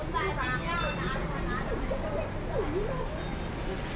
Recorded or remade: recorded